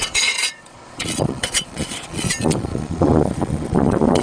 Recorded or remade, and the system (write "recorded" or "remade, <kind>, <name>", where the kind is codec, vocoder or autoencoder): remade, vocoder, Vocos